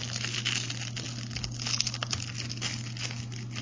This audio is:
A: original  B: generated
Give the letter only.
A